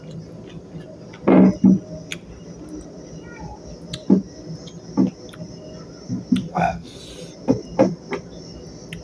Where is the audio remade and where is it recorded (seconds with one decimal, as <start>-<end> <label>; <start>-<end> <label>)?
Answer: 0.0-6.5 recorded; 6.5-7.0 remade; 7.0-9.0 recorded